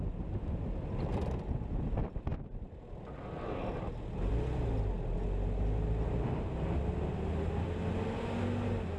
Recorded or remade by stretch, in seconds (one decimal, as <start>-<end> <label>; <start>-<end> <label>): 0.0-9.0 recorded